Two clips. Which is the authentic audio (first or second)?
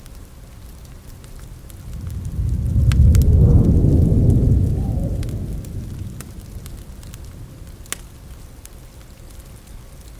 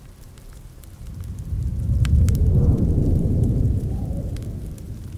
first